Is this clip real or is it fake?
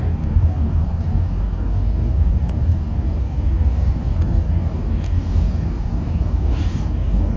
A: fake